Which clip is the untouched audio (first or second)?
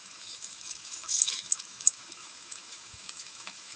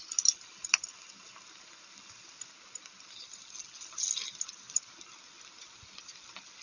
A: second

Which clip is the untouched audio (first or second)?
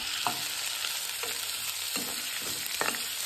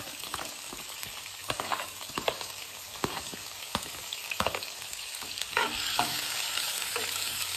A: first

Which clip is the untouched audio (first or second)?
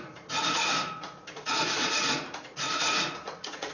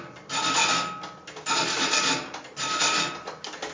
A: second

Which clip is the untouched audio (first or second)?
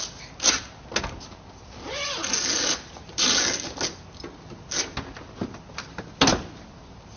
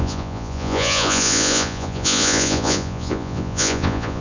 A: first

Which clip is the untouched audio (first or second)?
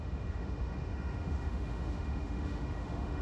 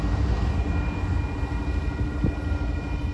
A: second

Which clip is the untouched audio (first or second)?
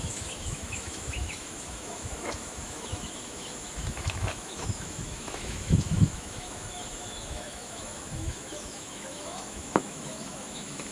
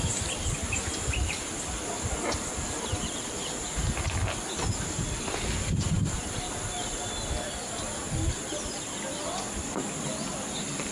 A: second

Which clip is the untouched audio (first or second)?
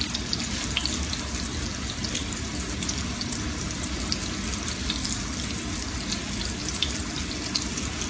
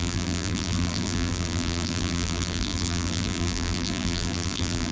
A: first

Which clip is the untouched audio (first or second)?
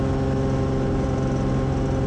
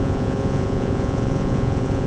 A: first